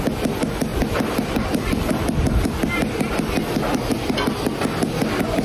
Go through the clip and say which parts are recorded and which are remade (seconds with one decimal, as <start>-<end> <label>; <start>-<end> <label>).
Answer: 0.0-5.4 recorded